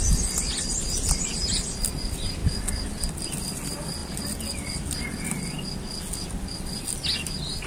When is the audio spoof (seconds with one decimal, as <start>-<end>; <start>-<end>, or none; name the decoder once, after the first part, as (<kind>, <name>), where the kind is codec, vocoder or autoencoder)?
none